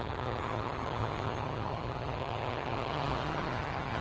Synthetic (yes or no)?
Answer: yes